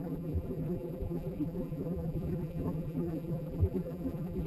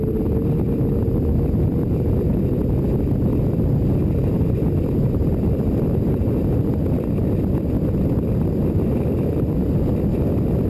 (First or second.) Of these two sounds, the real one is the second